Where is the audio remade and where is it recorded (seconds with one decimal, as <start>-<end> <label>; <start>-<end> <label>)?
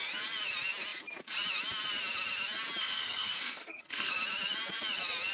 0.0-2.8 recorded; 2.8-4.1 remade; 4.1-5.3 recorded